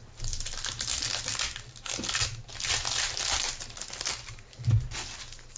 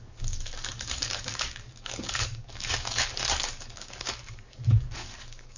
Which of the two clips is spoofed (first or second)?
second